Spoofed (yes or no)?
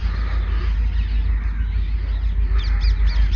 no